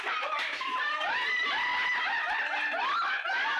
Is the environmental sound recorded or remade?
recorded